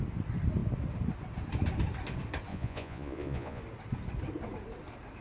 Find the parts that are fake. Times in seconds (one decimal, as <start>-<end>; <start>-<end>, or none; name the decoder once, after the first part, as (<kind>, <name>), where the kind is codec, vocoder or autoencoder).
2.5-3.6 (vocoder, Vocos)